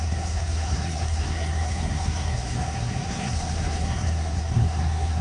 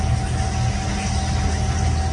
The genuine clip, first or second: second